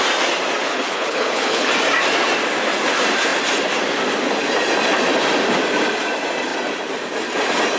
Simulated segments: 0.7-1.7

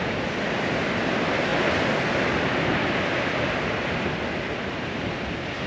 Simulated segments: none

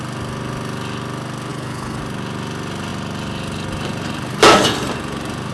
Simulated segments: 1.5-2.0

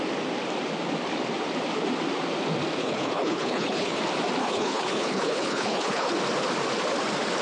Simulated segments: 2.8-4.0; 4.4-6.1